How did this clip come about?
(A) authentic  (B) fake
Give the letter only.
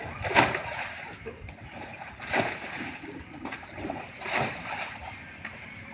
B